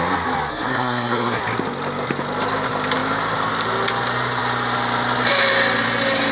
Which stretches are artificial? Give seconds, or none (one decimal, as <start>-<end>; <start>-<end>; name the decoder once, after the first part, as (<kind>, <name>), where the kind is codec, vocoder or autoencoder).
0.5-1.4 (codec, SNAC)